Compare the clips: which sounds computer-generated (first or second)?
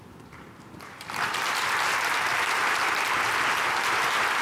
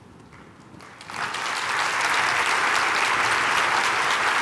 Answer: first